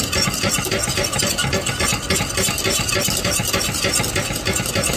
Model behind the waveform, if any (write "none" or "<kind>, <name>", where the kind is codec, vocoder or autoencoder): none